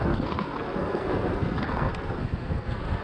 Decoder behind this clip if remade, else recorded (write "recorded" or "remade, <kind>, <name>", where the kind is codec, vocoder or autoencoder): remade, codec, SNAC